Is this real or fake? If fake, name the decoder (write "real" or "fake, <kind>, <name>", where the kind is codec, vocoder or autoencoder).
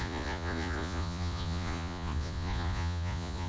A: fake, vocoder, Vocos